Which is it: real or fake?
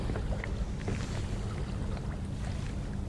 real